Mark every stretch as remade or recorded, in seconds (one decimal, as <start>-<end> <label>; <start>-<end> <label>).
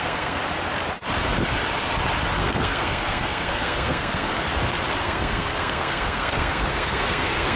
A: 0.0-0.4 remade; 0.4-2.4 recorded; 2.4-4.5 remade; 4.5-5.0 recorded; 5.0-7.6 remade